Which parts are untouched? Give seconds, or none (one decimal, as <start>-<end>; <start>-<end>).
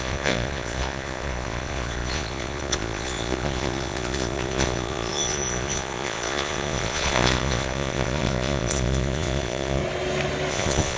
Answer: 9.8-10.5